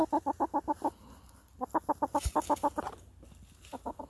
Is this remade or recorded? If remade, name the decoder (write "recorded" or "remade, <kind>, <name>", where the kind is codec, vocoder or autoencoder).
recorded